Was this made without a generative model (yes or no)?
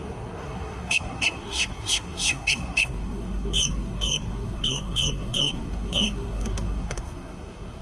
no